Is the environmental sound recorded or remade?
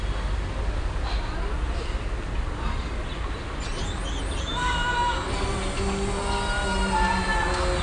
recorded